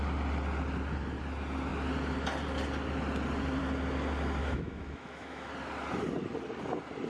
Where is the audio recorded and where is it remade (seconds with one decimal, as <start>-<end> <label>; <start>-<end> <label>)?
0.0-4.4 recorded; 4.4-5.5 remade; 5.5-7.1 recorded